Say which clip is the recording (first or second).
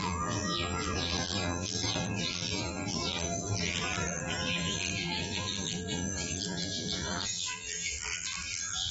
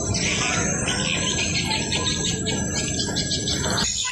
second